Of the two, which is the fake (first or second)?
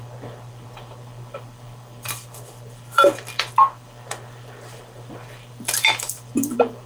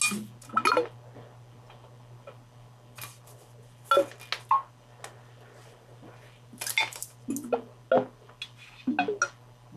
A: first